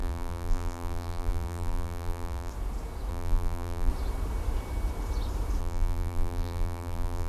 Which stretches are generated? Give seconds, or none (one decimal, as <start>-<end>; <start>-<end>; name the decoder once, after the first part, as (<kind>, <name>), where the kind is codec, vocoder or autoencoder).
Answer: 0.0-2.5 (vocoder, BigVGAN v2); 3.1-3.9; 5.6-7.3